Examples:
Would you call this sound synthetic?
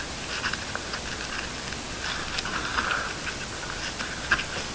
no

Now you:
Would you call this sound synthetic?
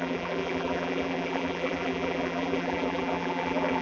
yes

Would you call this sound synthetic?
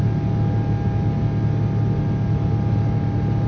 no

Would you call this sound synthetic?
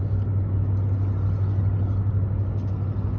no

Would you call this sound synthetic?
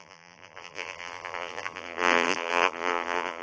yes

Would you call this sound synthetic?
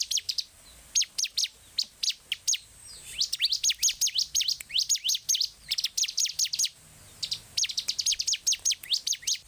no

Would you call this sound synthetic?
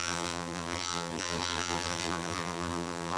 yes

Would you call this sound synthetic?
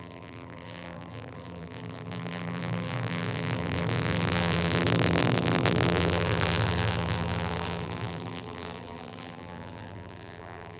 yes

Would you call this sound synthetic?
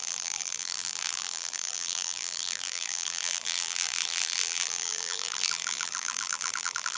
yes